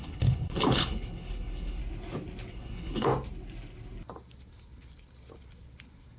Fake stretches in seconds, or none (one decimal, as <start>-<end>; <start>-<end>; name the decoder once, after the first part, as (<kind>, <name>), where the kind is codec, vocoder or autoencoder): 0.0-1.8 (codec, HILCodec); 2.5-3.1